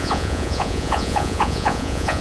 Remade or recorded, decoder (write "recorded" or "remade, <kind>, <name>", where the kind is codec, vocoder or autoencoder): remade, vocoder, Vocos